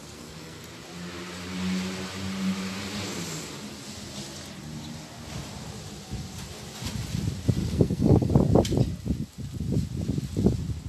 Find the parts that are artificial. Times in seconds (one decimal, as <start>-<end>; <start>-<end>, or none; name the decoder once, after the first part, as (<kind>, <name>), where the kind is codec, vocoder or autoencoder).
0.0-0.6 (codec, SNAC); 7.6-8.3